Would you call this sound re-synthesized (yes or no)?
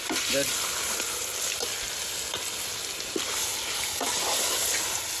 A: no